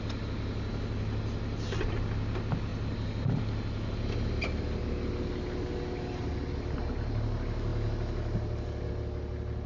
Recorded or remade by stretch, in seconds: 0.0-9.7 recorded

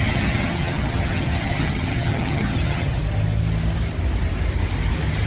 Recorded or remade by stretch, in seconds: 0.0-3.0 remade; 3.0-5.3 recorded

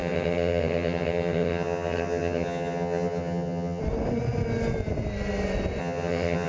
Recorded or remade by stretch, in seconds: 0.0-3.8 remade; 3.8-5.8 recorded; 5.8-6.5 remade

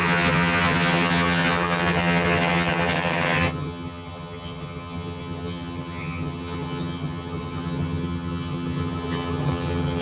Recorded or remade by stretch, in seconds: 0.0-10.0 remade